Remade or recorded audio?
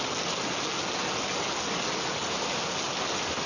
recorded